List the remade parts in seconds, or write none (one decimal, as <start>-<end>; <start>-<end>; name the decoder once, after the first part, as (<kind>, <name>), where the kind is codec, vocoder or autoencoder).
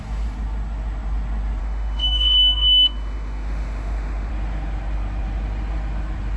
1.6-4.3 (autoencoder, DAC-VAE)